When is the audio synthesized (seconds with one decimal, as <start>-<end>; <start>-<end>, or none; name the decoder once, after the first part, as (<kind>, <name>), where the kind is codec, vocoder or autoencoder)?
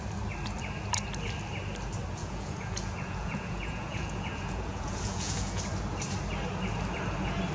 2.2-5.6 (vocoder, Vocos)